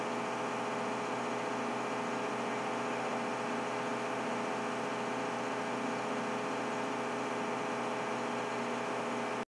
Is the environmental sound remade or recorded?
recorded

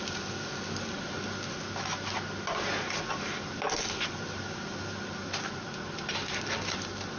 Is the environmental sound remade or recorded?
recorded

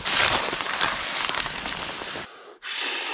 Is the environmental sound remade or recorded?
recorded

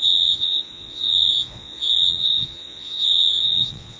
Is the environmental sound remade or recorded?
remade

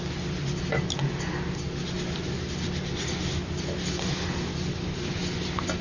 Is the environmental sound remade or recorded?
recorded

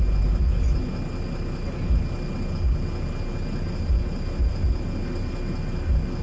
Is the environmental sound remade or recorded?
recorded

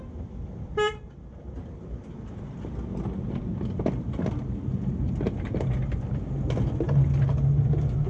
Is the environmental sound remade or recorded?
recorded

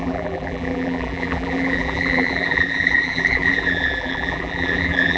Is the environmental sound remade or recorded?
remade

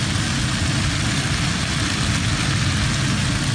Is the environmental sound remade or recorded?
recorded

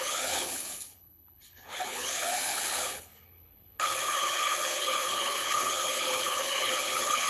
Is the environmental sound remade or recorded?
remade